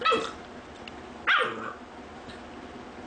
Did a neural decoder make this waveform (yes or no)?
no